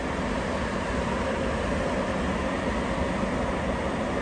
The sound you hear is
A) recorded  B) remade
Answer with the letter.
A